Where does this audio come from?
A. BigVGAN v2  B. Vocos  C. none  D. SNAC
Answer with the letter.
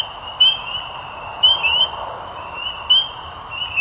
A